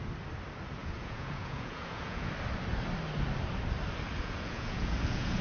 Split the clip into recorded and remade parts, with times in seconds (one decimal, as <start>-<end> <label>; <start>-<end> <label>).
0.0-0.8 recorded; 0.8-2.3 remade; 2.3-4.2 recorded; 4.2-5.4 remade